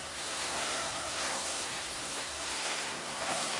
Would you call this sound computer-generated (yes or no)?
yes